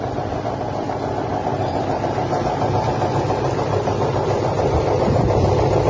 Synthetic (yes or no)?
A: yes